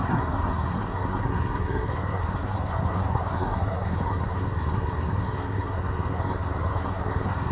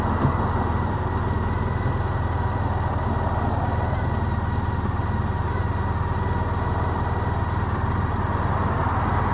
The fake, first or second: first